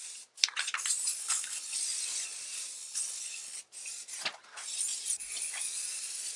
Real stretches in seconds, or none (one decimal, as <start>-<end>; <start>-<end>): 0.0-1.2; 1.8-2.8; 3.6-6.4

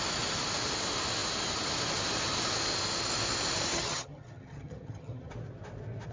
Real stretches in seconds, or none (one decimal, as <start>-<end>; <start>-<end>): 0.0-3.7; 5.3-6.1

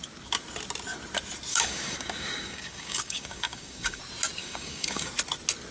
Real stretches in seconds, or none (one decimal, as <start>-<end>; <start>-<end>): 0.0-1.5; 4.0-4.4; 5.1-5.7

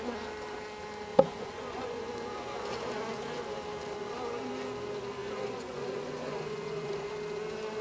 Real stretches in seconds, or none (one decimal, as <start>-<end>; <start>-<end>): 0.0-1.1; 2.1-5.2; 7.1-7.8

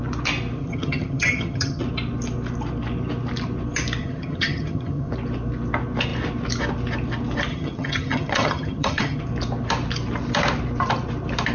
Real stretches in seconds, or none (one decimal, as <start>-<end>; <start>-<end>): 0.0-0.6; 1.8-4.0; 5.1-7.5; 9.2-11.5